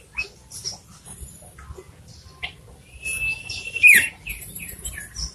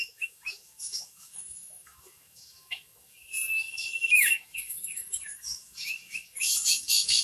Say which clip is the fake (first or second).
second